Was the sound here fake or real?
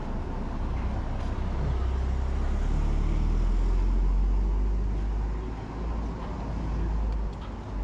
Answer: real